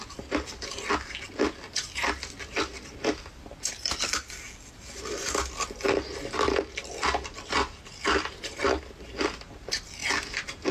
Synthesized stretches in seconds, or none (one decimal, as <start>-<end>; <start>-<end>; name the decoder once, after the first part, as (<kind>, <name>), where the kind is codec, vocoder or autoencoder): none